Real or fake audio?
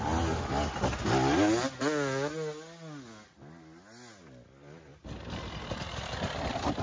real